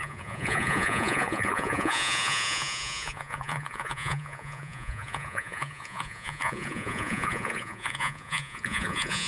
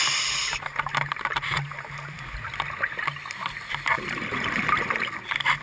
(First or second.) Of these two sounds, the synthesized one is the first